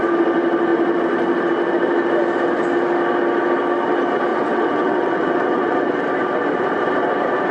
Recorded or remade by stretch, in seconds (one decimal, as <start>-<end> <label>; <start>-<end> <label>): 0.0-4.3 recorded; 4.3-6.1 remade; 6.1-7.5 recorded